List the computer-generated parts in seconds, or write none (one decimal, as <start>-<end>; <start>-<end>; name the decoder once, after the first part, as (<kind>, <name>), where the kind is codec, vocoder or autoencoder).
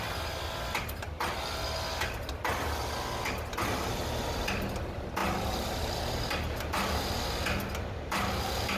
none